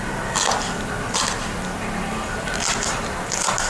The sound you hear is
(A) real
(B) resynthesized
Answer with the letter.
A